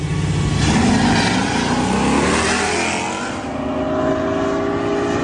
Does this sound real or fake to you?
real